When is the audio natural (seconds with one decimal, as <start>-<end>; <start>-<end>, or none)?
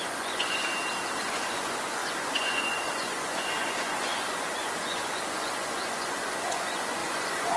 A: 0.6-1.2